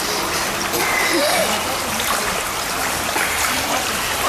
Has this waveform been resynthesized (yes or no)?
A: no